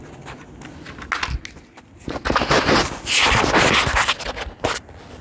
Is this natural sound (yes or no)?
yes